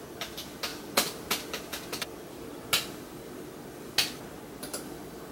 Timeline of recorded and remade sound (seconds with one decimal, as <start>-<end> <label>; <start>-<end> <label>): 0.0-5.3 recorded